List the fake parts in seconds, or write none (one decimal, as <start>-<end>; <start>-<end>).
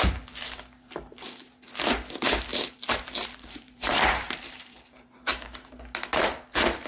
2.5-5.8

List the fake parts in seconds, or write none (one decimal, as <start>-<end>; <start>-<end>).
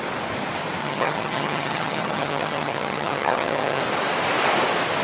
0.8-3.8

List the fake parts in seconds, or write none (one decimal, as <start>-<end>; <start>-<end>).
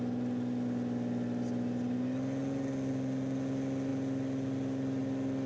none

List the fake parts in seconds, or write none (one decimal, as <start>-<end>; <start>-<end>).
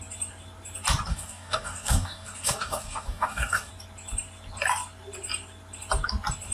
1.1-3.7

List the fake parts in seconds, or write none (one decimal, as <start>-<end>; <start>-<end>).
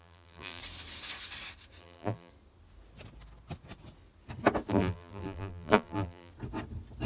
0.0-0.6; 1.8-2.3; 4.7-6.3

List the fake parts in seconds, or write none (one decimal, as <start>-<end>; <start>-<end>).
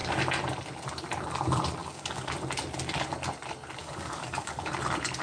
1.8-2.3; 3.8-4.7